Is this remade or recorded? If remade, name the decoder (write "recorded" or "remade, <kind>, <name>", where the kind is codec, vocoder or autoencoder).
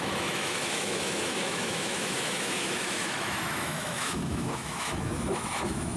remade, autoencoder, DAC-VAE